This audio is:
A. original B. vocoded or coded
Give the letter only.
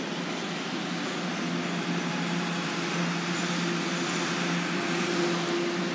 A